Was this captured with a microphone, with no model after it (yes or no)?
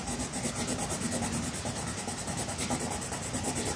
yes